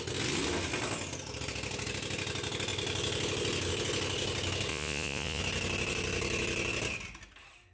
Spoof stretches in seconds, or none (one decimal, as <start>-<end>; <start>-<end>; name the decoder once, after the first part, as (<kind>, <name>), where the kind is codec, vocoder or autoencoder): 4.7-5.4 (vocoder, Vocos)